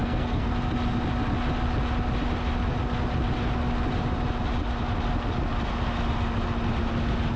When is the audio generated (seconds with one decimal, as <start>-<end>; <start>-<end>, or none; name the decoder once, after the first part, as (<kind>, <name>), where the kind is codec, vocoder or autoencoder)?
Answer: 0.0-0.5 (codec, SNAC)